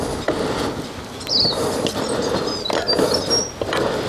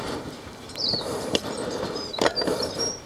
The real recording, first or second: first